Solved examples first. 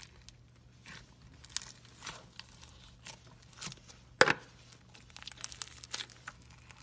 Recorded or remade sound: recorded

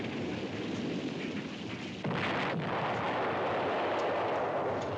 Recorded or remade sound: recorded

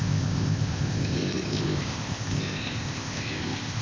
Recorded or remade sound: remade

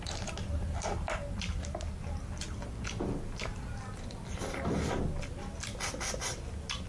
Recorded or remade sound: recorded